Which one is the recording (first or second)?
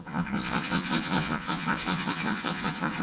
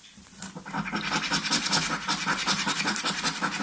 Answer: second